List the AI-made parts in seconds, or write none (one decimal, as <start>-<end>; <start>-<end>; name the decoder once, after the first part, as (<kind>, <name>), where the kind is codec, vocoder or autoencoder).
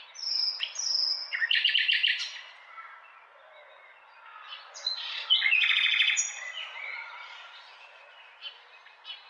1.2-1.7 (vocoder, Vocos); 3.9-6.5